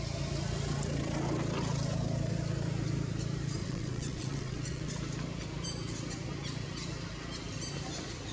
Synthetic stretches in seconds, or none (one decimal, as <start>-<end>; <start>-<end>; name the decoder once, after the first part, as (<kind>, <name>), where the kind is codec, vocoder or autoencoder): 3.6-4.9 (vocoder, WaveNeXt)